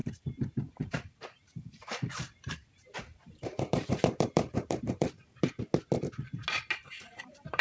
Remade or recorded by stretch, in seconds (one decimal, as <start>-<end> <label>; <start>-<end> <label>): 0.0-5.0 remade; 5.0-7.0 recorded; 7.0-7.6 remade